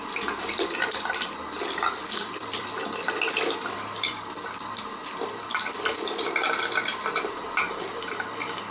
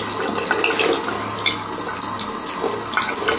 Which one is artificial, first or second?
first